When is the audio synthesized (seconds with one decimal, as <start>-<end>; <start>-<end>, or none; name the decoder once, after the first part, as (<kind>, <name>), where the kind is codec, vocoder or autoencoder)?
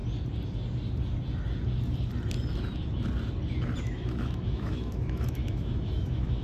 3.8-6.4 (autoencoder, DAC-VAE)